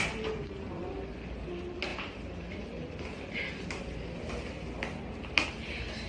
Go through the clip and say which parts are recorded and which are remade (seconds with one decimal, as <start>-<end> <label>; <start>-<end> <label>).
0.0-6.1 recorded